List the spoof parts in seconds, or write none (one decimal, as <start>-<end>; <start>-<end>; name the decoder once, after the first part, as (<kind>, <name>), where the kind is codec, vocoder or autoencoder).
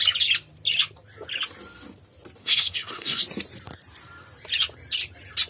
2.4-3.2 (codec, SNAC)